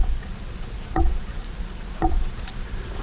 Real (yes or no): no